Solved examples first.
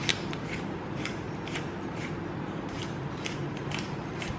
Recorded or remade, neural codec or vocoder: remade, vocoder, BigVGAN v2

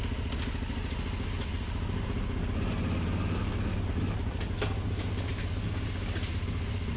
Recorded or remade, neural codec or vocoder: recorded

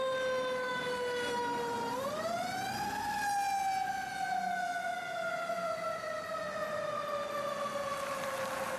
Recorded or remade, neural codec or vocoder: recorded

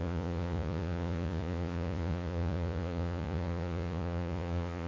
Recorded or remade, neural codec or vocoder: remade, vocoder, Vocos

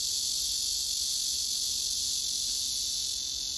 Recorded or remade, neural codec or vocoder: recorded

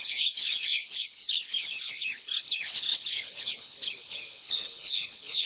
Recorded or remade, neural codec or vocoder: remade, codec, HILCodec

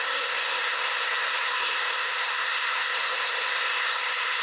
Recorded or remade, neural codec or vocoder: remade, codec, SNAC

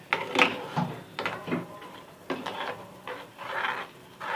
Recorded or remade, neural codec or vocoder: recorded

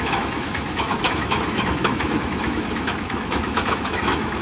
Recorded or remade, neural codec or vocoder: remade, autoencoder, DAC-VAE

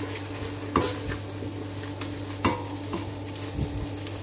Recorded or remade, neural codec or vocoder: recorded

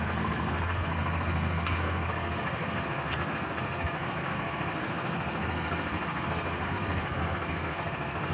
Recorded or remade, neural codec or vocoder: remade, codec, SNAC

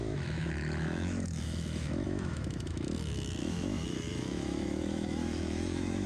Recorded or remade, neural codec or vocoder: remade, autoencoder, DAC-VAE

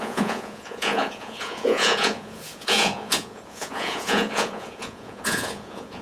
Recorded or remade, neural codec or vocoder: remade, vocoder, Vocos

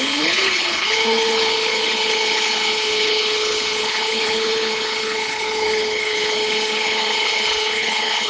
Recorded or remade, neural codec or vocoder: remade, codec, HILCodec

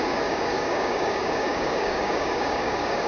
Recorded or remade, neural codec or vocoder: remade, codec, DAC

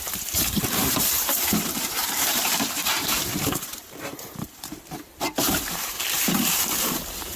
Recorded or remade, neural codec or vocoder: remade, vocoder, BigVGAN v2